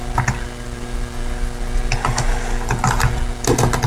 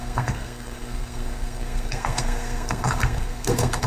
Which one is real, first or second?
first